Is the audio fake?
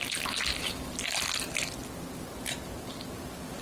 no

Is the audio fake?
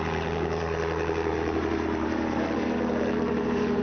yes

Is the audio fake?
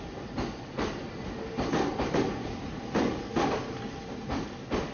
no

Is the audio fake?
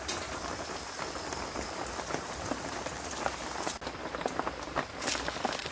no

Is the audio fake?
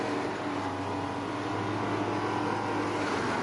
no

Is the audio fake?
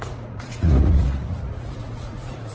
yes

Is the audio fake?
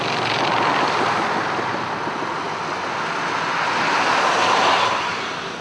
no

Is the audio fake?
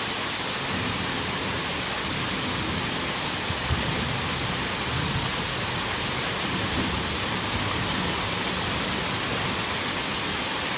no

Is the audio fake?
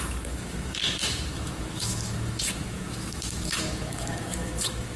yes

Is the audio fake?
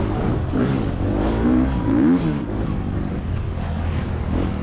yes